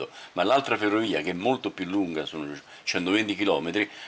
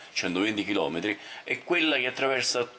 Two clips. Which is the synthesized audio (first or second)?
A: second